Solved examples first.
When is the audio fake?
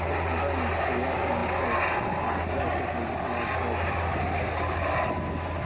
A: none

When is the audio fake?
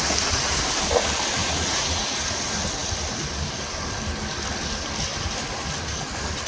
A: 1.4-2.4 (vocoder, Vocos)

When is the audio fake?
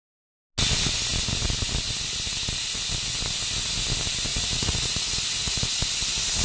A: 4.3-5.6 (vocoder, Vocos)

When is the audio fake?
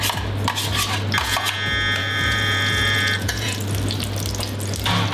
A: 2.0-3.6 (vocoder, Vocos)